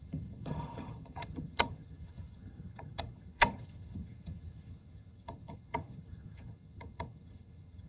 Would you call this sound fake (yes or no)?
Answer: yes